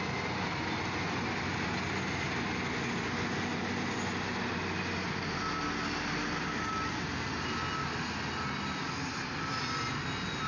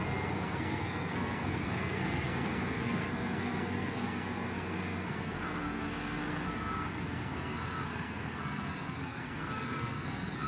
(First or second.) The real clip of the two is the first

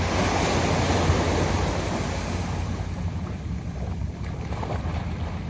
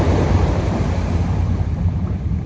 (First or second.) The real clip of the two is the first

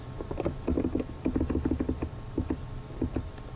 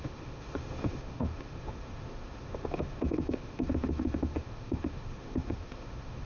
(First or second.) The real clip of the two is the first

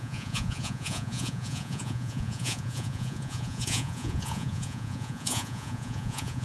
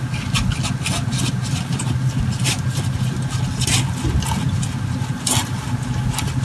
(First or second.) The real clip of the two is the second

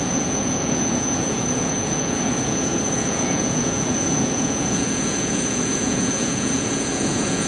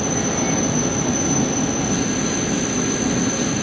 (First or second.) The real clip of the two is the second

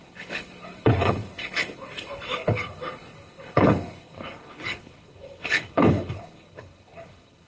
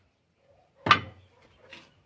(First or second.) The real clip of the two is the second